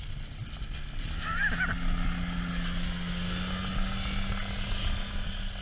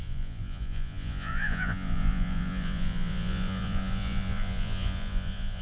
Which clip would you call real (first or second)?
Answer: first